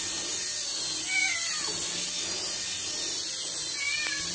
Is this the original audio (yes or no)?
yes